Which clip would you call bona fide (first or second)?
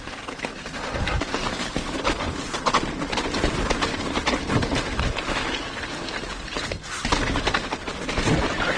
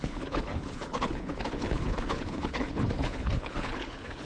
first